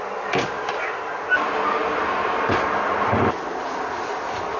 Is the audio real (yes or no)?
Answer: yes